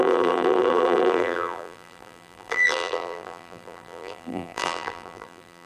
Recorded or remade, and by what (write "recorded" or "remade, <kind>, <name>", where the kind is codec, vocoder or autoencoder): remade, vocoder, BigVGAN v2